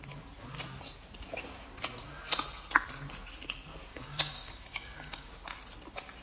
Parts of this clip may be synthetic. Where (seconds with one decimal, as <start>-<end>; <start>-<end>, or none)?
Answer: 3.9-5.3